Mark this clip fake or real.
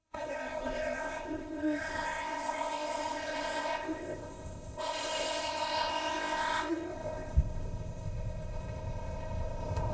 fake